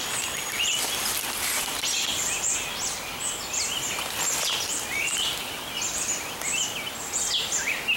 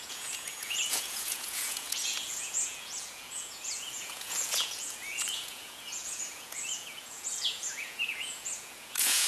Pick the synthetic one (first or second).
second